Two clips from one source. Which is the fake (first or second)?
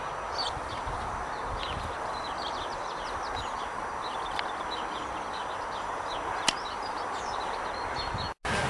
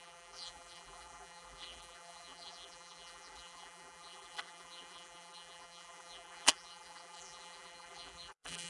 second